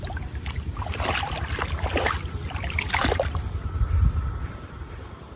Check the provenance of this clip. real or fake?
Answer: real